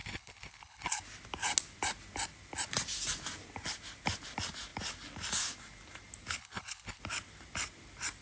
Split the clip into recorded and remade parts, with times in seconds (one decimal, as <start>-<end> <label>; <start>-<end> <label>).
0.0-1.0 remade; 1.0-6.4 recorded; 6.4-7.0 remade; 7.0-8.2 recorded